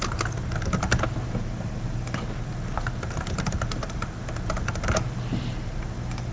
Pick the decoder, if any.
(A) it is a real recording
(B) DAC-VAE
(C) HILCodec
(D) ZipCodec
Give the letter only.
A